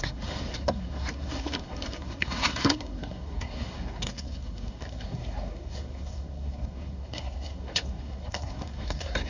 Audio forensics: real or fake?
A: fake